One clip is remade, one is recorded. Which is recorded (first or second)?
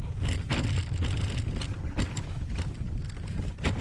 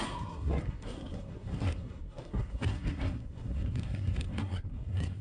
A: first